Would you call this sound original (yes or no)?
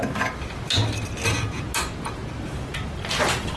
yes